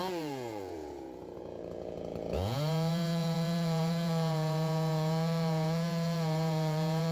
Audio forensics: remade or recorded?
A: remade